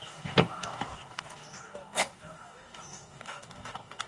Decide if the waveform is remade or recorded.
remade